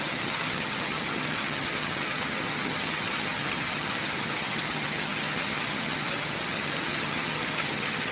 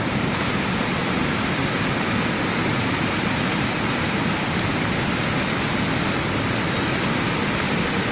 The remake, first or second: first